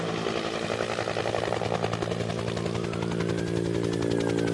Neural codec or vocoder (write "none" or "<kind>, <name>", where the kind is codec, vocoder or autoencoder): none